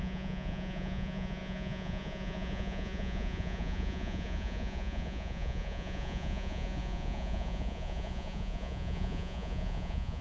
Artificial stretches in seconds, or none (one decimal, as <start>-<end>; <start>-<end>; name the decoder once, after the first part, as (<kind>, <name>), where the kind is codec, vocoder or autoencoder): 0.0-10.2 (vocoder, Vocos)